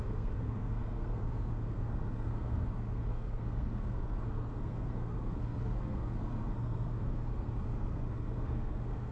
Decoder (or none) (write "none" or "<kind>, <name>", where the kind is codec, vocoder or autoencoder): codec, SNAC